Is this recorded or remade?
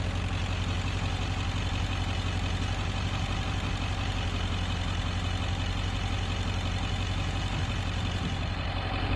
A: recorded